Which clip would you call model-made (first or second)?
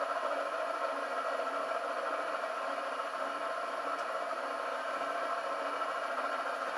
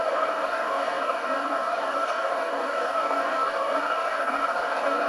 second